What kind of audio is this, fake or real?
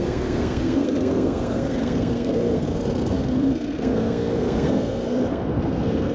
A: fake